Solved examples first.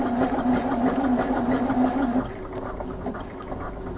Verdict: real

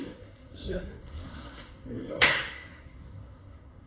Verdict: fake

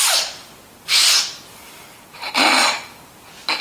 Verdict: real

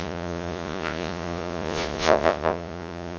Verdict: fake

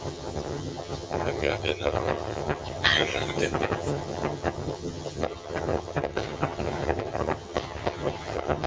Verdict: fake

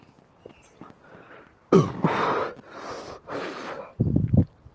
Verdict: real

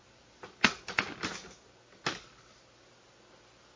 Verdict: real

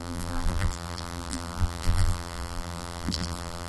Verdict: fake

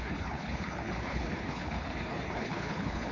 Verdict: fake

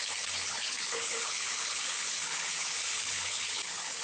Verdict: fake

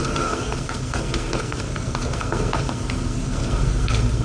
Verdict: fake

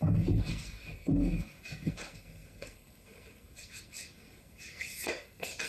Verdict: fake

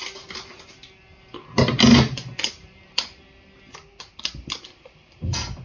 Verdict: real